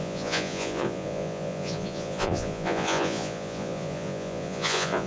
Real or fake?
fake